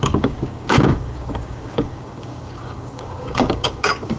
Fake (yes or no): yes